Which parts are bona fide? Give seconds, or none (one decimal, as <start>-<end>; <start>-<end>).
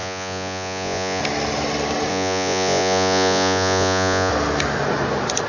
1.2-2.1; 4.3-5.5